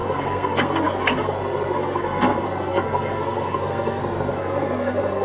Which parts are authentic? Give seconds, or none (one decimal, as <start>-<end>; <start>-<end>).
none